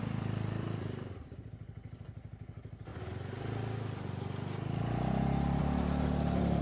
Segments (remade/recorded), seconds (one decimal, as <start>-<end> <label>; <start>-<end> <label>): 0.0-2.9 remade; 2.9-5.6 recorded; 5.6-6.6 remade